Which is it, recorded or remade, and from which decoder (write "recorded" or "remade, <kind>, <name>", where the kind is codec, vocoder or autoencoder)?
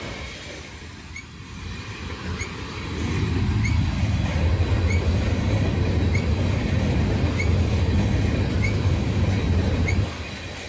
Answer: recorded